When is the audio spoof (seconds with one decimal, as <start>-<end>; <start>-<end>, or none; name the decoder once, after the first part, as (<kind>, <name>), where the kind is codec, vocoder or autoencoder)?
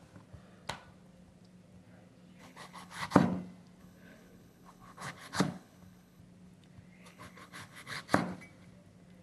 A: 2.4-3.0 (codec, HILCodec); 3.8-6.2; 7.1-8.0